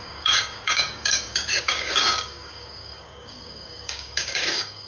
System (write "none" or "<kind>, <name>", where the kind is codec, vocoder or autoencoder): codec, DAC